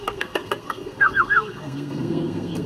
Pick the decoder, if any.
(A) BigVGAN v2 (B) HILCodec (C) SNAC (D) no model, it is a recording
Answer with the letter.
C